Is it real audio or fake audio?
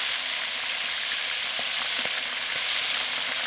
fake